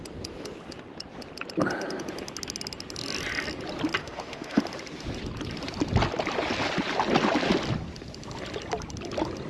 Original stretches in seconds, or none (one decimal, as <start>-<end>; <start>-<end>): 0.0-4.0; 4.6-9.5